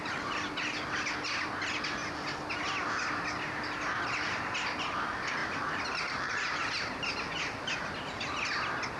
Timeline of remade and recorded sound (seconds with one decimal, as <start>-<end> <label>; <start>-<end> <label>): 0.0-9.0 recorded